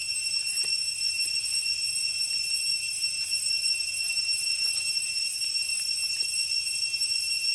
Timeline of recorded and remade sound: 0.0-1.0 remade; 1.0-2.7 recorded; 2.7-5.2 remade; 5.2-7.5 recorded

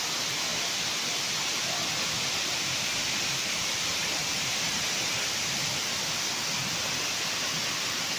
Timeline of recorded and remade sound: 0.0-3.9 recorded; 3.9-5.5 remade; 5.5-8.2 recorded